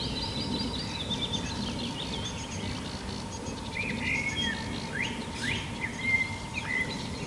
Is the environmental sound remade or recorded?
recorded